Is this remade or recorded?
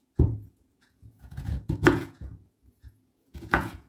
remade